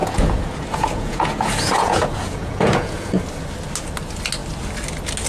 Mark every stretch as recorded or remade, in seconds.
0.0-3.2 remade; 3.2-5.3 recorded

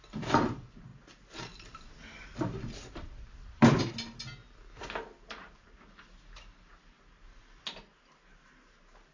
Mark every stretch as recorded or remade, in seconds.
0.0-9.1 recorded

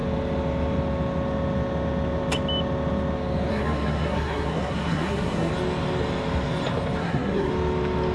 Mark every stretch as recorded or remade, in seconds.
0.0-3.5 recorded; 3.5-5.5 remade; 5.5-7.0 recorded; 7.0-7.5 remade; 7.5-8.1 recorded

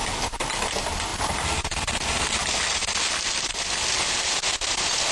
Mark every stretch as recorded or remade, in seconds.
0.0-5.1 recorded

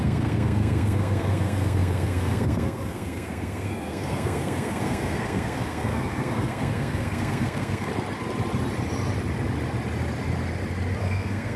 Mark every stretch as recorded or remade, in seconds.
0.0-7.9 remade; 7.9-11.0 recorded; 11.0-11.6 remade

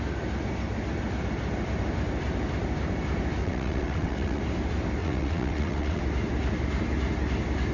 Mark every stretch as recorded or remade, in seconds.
0.0-3.4 recorded; 3.4-4.4 remade; 4.4-5.0 recorded; 5.0-6.0 remade; 6.0-7.7 recorded

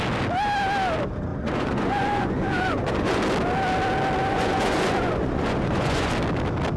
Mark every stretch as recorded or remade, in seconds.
0.0-1.3 recorded; 1.3-3.2 remade; 3.2-4.3 recorded; 4.3-6.1 remade; 6.1-6.8 recorded

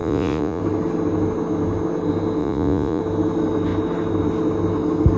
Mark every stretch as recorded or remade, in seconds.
0.0-0.6 remade; 0.6-2.4 recorded; 2.4-3.0 remade; 3.0-5.2 recorded